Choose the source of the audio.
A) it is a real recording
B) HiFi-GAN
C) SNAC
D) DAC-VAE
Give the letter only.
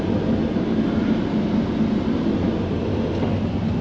A